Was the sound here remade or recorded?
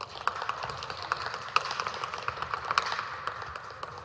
recorded